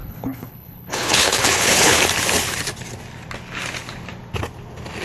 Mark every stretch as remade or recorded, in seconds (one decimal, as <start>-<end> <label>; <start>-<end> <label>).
0.0-2.0 remade; 2.0-5.0 recorded